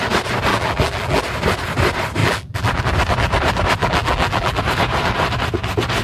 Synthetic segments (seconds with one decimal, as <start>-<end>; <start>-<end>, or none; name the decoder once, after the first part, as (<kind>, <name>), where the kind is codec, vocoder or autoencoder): 0.5-1.2 (vocoder, BigVGAN v2); 2.2-2.8; 3.8-4.6